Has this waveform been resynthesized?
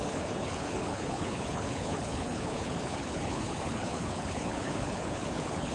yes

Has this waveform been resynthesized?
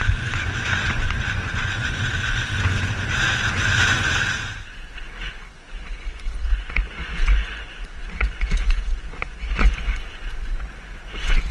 yes